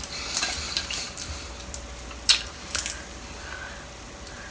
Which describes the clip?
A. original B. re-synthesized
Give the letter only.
A